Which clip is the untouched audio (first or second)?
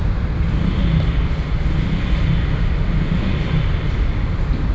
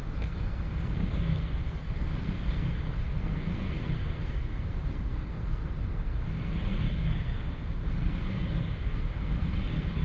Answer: first